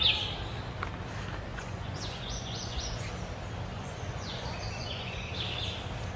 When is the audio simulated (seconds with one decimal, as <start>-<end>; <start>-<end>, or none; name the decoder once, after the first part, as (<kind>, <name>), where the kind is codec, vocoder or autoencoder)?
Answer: 1.5-3.1 (vocoder, Vocos); 3.7-5.3